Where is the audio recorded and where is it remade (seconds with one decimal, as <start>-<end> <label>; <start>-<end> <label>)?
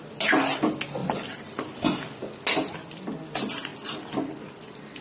0.0-5.0 recorded